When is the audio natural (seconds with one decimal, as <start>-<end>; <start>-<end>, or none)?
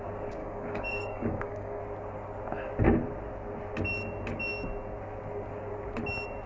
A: 0.0-0.4; 1.8-6.5